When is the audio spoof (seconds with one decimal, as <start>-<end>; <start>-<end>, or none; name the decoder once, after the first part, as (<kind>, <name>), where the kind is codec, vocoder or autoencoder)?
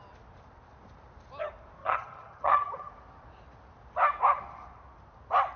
1.8-2.9 (vocoder, HiFi-GAN)